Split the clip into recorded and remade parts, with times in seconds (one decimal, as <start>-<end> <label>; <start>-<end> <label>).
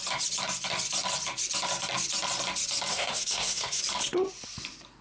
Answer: 0.0-2.9 recorded; 2.9-3.8 remade; 3.8-5.0 recorded